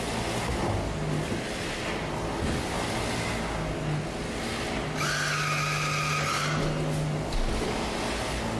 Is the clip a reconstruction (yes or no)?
no